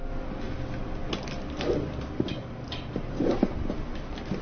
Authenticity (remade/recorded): recorded